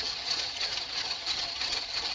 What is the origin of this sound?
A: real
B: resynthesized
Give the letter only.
B